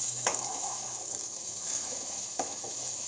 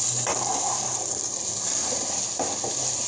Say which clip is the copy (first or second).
first